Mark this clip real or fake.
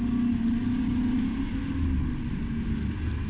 real